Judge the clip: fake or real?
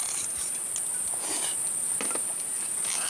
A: real